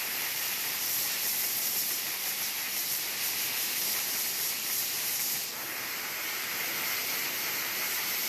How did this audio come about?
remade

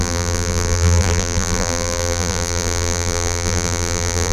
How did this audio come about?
remade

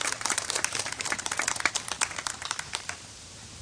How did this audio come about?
remade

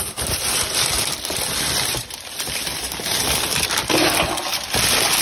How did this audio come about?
remade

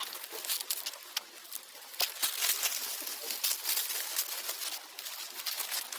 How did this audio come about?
recorded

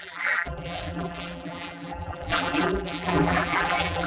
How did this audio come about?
remade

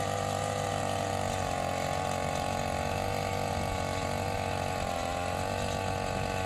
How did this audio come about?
recorded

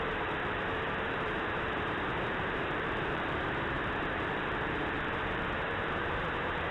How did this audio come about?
remade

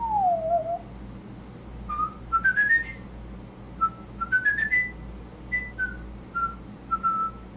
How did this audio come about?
recorded